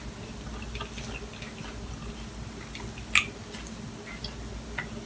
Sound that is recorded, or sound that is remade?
recorded